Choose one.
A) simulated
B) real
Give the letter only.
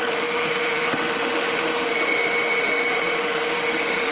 A